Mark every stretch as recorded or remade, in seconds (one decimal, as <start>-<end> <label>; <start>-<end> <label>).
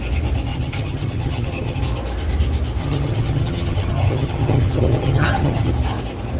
0.0-0.5 recorded; 0.5-1.8 remade; 1.8-2.8 recorded; 2.8-5.7 remade; 5.7-6.4 recorded